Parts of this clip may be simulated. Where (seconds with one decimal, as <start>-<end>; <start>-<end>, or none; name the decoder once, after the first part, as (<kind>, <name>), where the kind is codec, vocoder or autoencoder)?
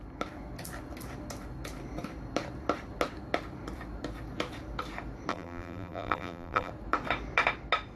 5.3-6.7 (vocoder, BigVGAN v2)